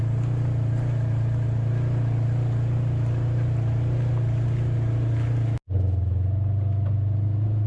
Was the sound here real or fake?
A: real